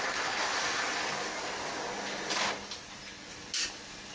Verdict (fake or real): real